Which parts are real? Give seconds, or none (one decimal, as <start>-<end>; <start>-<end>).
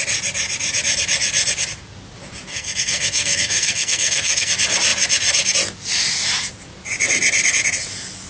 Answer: 0.0-2.5; 4.5-8.3